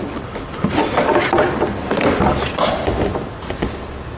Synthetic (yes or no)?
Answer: no